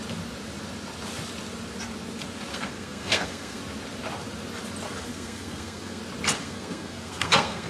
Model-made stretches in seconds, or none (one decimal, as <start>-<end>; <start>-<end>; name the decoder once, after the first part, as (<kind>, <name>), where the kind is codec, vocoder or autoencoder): 2.5-3.6 (codec, SNAC); 5.1-6.0; 6.4-7.7